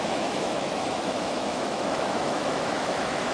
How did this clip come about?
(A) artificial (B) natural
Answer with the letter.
A